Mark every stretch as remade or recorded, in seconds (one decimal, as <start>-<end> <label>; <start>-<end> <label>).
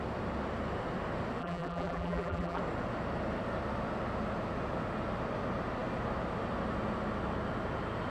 0.0-1.4 recorded; 1.4-2.6 remade; 2.6-8.1 recorded